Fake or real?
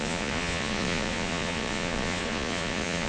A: fake